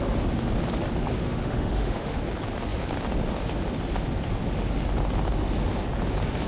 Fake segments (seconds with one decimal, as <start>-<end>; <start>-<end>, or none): 1.2-2.2